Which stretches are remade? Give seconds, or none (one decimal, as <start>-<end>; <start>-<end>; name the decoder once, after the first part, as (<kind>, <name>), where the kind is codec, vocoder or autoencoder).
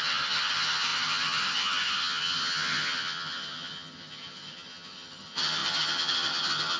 0.0-6.8 (vocoder, HiFi-GAN)